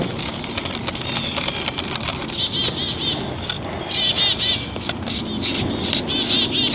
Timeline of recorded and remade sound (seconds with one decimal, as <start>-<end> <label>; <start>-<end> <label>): 0.0-6.7 recorded